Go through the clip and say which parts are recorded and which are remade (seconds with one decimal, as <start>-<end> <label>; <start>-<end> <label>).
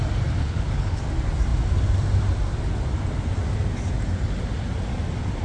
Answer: 0.0-0.4 recorded; 0.4-1.0 remade; 1.0-5.4 recorded